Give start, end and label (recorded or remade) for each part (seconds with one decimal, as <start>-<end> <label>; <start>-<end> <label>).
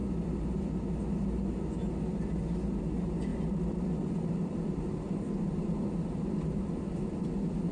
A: 0.0-1.1 remade; 1.1-3.3 recorded; 3.3-7.7 remade